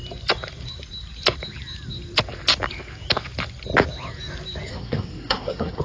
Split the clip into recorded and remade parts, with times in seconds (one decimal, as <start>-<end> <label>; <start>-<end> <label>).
0.0-4.7 recorded; 4.7-5.8 remade